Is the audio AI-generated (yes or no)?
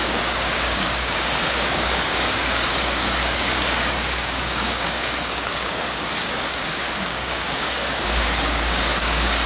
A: yes